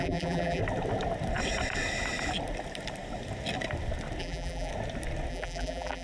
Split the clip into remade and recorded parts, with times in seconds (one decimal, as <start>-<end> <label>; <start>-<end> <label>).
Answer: 0.0-0.6 remade; 0.6-4.2 recorded; 4.2-4.7 remade; 4.7-5.3 recorded; 5.3-6.0 remade